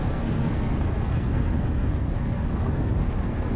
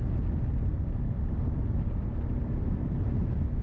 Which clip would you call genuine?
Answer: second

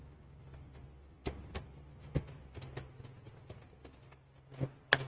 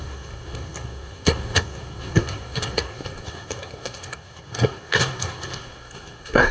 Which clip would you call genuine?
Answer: first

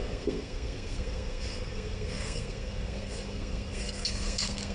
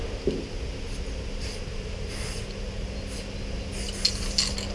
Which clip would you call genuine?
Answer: second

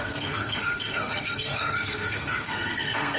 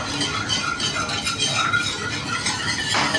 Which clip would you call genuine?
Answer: second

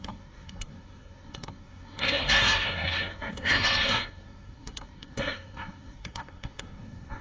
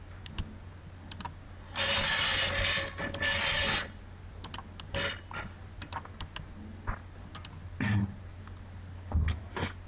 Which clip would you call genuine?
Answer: second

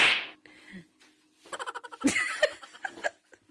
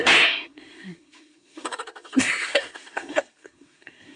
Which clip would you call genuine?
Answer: first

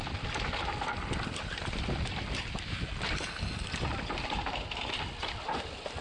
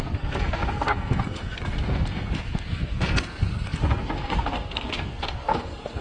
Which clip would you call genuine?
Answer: first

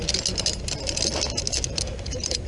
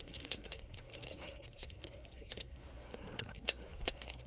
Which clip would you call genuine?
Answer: first